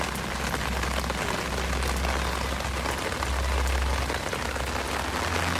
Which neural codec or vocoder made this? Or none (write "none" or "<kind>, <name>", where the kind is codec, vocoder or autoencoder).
none